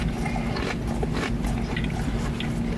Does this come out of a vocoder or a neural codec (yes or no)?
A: no